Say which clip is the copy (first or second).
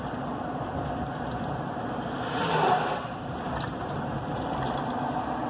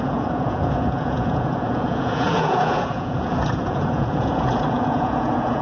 second